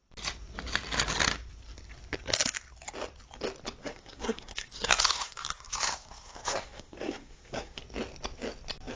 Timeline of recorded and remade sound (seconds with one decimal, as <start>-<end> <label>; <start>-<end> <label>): 0.0-3.8 recorded; 3.8-7.8 remade; 7.8-9.0 recorded

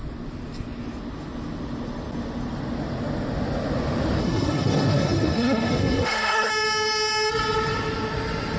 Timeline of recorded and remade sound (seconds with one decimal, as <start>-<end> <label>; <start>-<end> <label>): 0.0-4.2 recorded; 4.2-6.5 remade; 6.5-8.6 recorded

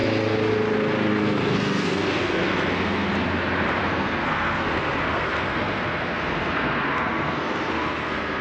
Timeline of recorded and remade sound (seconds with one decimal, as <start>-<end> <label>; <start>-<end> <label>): 0.0-1.1 recorded; 1.1-3.1 remade; 3.1-3.8 recorded; 3.8-8.4 remade

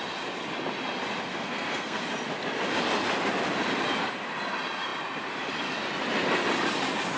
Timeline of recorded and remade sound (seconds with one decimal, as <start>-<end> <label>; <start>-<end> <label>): 0.0-1.3 recorded; 1.3-2.0 remade; 2.0-7.2 recorded